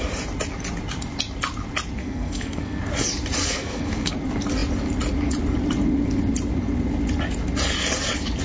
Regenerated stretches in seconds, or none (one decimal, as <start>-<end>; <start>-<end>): 2.0-2.8; 3.4-4.1